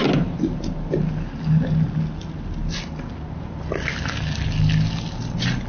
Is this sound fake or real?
real